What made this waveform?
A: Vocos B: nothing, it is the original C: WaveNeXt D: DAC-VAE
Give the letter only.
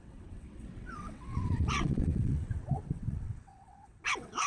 C